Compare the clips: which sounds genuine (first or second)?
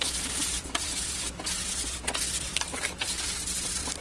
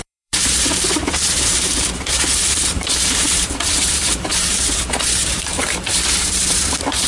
first